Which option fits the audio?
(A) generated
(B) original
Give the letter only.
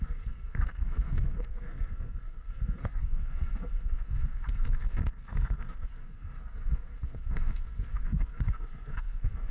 A